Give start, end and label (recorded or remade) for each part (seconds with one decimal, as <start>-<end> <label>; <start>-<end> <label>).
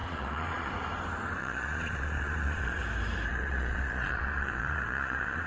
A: 0.0-0.7 remade; 0.7-1.4 recorded; 1.4-2.8 remade; 2.8-3.3 recorded; 3.3-5.5 remade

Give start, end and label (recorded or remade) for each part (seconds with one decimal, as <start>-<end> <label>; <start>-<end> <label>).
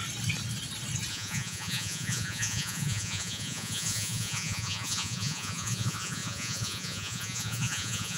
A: 0.0-1.1 recorded; 1.1-8.2 remade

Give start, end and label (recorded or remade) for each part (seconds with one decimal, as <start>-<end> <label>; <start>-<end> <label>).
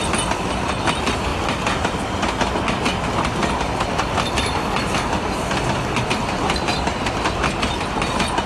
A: 0.0-8.5 recorded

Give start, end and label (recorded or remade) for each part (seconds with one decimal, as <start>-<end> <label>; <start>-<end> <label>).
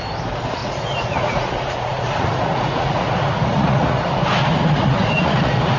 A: 0.0-0.6 recorded; 0.6-4.1 remade; 4.1-4.5 recorded; 4.5-5.8 remade